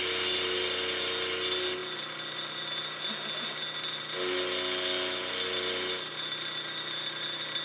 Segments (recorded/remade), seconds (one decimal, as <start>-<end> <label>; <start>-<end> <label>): 0.0-7.6 recorded